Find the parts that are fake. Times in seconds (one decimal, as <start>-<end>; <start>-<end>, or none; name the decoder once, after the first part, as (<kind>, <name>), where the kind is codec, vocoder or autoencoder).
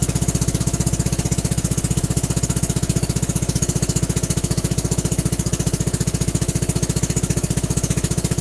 0.0-8.4 (autoencoder, DAC-VAE)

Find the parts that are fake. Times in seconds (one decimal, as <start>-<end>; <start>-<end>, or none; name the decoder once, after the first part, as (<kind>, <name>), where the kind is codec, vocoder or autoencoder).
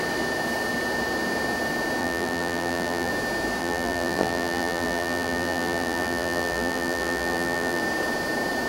2.0-3.1 (vocoder, BigVGAN v2); 3.6-7.8